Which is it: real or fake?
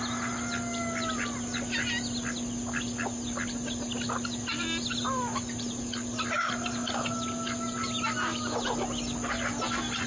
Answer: real